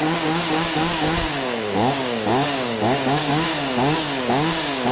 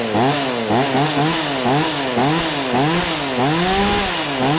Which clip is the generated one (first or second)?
first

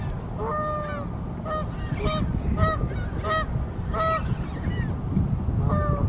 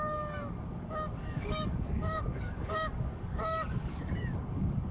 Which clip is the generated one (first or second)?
second